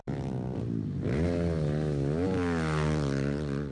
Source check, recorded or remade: recorded